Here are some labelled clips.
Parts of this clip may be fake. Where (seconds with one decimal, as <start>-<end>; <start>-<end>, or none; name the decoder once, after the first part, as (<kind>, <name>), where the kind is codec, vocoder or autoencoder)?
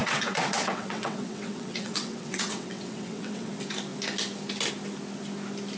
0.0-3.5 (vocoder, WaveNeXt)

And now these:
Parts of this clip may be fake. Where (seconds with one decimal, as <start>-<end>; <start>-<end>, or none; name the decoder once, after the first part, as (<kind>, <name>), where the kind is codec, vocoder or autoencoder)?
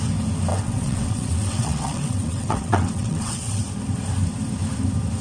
0.5-3.6 (vocoder, WaveNeXt)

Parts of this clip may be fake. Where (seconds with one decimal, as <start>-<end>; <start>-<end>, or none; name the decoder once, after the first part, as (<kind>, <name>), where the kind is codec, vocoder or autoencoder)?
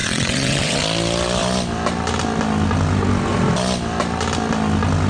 0.0-0.8 (vocoder, WaveNeXt)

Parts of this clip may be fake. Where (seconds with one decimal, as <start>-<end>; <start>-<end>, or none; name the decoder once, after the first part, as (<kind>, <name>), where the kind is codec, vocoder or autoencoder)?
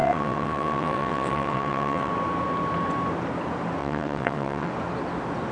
0.0-2.1 (vocoder, WaveNeXt); 3.8-4.7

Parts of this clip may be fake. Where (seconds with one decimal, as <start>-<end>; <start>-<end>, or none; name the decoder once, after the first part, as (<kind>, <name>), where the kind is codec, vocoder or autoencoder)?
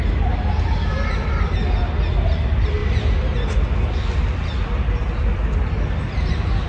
none